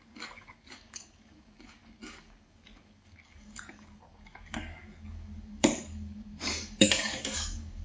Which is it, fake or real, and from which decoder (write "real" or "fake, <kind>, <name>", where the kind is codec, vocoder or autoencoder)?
fake, codec, DAC